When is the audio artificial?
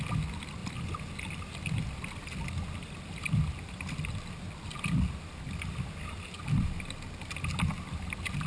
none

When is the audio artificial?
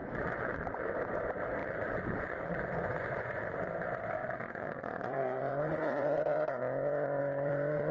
0.0-0.9 (vocoder, Vocos); 1.6-3.4; 4.2-6.6; 7.2-7.9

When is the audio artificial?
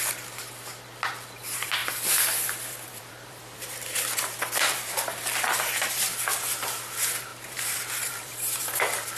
1.8-5.6 (vocoder, BigVGAN v2); 7.3-9.2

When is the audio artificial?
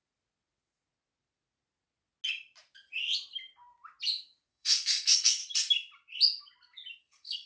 4.5-5.4 (codec, SNAC); 7.0-7.5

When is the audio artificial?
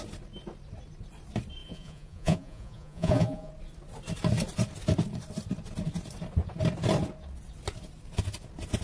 1.6-3.5 (vocoder, Vocos)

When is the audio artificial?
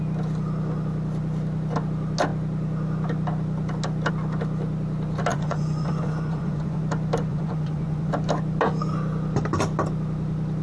5.3-6.8 (vocoder, Vocos); 7.3-8.1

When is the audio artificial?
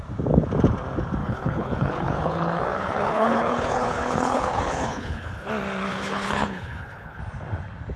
1.2-5.5 (codec, HILCodec); 5.9-7.2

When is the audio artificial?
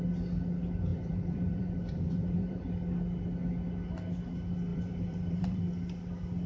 0.9-2.7 (vocoder, BigVGAN v2); 4.7-5.6